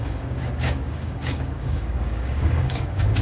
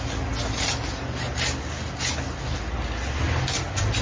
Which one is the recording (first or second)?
second